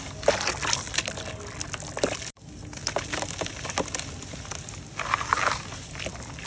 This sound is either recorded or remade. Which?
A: recorded